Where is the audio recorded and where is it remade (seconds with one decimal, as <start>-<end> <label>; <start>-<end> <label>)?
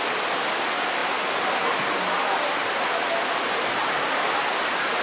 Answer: 0.0-5.0 recorded